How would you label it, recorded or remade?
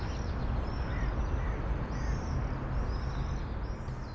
recorded